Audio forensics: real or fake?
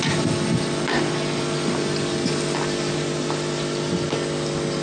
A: real